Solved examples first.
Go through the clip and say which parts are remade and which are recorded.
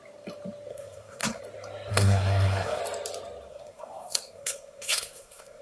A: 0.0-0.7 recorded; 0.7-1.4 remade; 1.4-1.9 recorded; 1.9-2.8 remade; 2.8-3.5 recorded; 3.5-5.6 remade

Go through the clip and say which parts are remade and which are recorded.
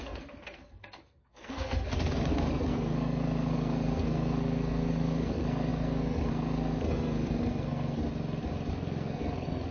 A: 0.0-8.0 remade; 8.0-8.7 recorded; 8.7-9.7 remade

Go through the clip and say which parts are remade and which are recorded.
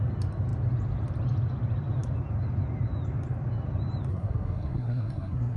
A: 0.0-4.1 recorded; 4.1-5.6 remade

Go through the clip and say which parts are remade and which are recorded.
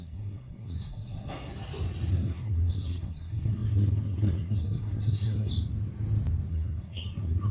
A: 0.0-1.5 remade; 1.5-2.1 recorded; 2.1-5.5 remade; 5.5-6.5 recorded; 6.5-7.5 remade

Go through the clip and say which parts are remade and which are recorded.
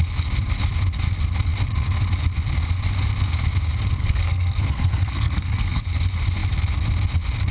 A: 0.0-4.0 recorded; 4.0-5.8 remade; 5.8-7.5 recorded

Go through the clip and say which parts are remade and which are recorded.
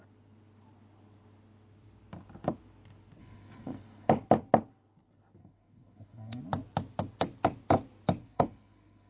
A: 0.0-3.2 recorded; 3.2-4.1 remade; 4.1-5.4 recorded; 5.4-6.4 remade; 6.4-8.2 recorded; 8.2-9.1 remade